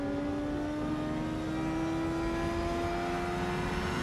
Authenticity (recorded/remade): recorded